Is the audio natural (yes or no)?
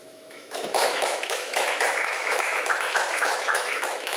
no